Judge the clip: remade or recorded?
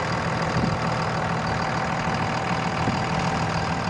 recorded